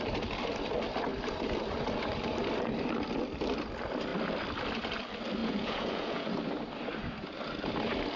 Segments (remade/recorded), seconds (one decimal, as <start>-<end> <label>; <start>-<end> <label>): 0.0-5.4 recorded; 5.4-6.3 remade; 6.3-8.2 recorded